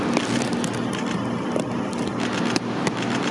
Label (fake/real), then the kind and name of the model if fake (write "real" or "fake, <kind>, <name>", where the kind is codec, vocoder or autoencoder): real